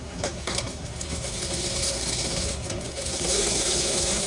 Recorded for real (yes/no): no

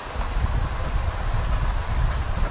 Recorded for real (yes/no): yes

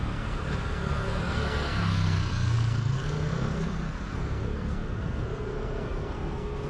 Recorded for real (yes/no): no